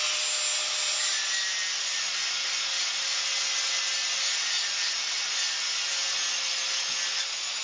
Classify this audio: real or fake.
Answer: real